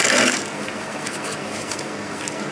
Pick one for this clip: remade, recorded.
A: remade